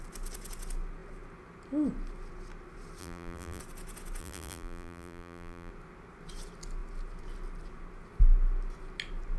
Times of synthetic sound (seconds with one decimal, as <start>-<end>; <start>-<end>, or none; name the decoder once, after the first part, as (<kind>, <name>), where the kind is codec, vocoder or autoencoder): 3.0-3.6 (vocoder, BigVGAN v2); 4.2-5.7